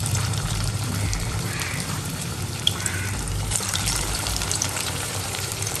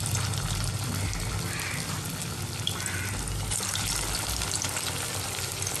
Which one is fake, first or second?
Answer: first